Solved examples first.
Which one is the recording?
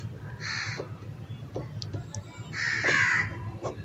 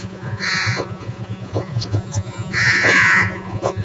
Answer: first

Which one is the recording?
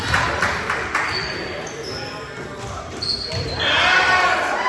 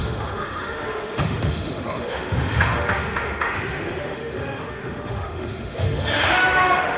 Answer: first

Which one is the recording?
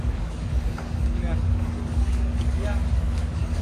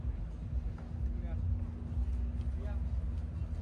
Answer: second